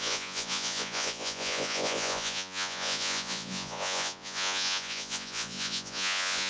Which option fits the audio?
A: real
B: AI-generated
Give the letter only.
B